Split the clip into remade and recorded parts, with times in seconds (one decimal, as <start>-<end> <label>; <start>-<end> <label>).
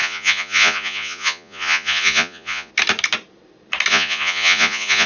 0.0-2.7 remade; 2.7-3.9 recorded; 3.9-5.1 remade